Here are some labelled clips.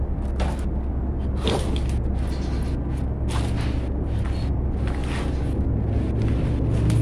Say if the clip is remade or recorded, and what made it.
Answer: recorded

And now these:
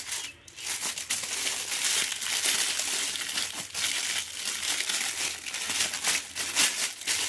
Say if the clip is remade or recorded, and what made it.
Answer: recorded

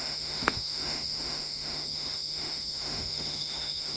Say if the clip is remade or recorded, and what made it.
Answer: remade, autoencoder, DAC-VAE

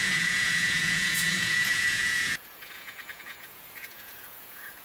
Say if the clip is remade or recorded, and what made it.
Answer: remade, vocoder, Vocos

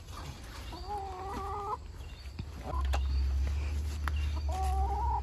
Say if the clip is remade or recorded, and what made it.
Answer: recorded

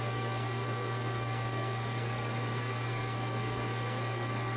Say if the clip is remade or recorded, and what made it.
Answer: remade, codec, SNAC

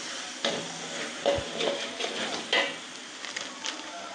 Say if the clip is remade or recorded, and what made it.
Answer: recorded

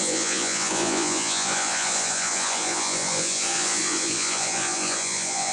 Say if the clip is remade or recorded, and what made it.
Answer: remade, vocoder, Vocos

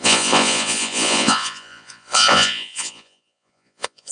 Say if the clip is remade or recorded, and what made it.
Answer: remade, vocoder, Vocos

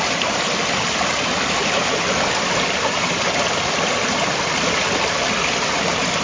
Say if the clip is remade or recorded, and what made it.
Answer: recorded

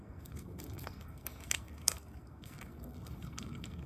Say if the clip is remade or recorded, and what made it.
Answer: remade, codec, SNAC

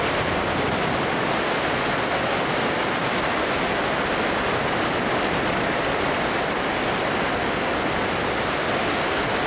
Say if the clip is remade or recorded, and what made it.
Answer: recorded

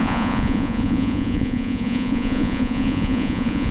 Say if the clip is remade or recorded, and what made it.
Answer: remade, vocoder, Vocos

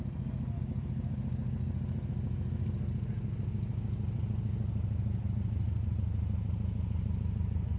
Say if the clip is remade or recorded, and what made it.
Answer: recorded